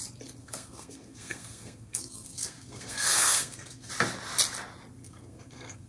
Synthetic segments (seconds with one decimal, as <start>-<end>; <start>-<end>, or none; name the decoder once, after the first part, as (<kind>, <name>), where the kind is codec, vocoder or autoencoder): 0.4-3.9 (codec, SNAC); 5.0-5.9